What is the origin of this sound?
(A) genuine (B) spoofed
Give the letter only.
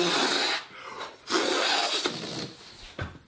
A